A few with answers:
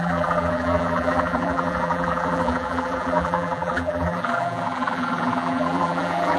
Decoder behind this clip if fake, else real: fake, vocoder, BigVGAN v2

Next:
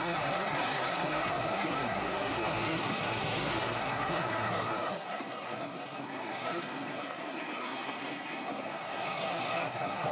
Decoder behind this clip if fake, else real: fake, codec, SNAC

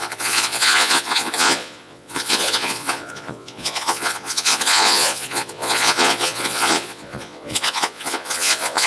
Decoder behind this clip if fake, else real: fake, vocoder, Vocos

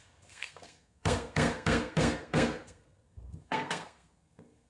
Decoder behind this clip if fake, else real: fake, codec, SNAC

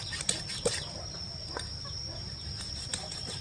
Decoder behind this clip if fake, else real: real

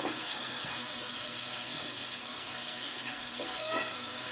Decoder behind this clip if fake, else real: fake, codec, SNAC